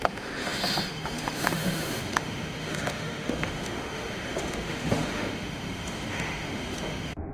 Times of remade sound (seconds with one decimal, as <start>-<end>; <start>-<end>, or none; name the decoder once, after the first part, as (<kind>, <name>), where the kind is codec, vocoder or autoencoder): 0.0-7.3 (autoencoder, DAC-VAE)